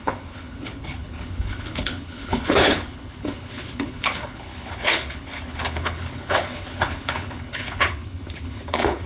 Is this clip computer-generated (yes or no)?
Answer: yes